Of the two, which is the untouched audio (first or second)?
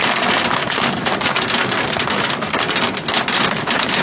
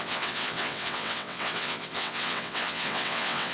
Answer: first